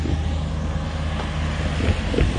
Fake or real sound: real